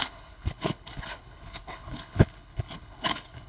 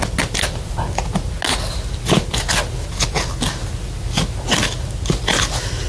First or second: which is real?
second